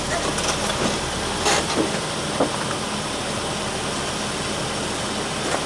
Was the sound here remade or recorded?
recorded